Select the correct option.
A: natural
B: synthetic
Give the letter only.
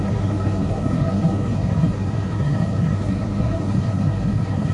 B